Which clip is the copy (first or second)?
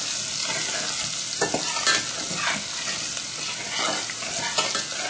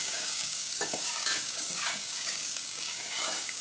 second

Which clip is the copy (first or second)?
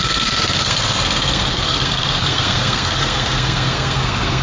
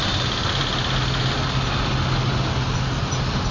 first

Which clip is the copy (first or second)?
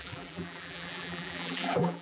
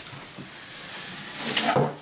first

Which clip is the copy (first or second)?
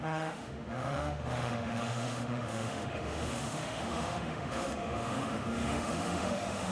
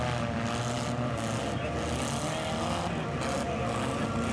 first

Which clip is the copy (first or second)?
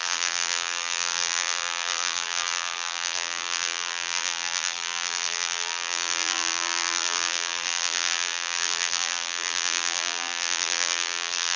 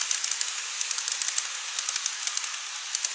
first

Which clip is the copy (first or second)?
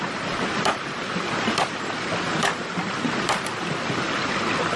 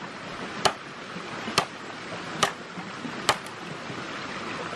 first